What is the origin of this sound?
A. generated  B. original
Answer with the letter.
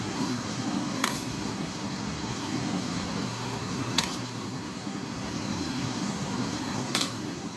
A